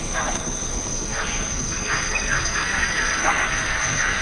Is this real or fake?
fake